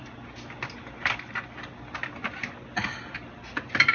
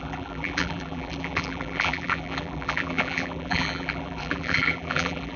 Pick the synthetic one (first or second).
second